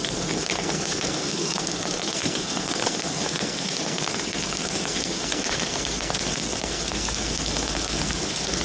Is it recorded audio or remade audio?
remade